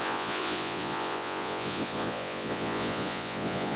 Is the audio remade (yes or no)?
yes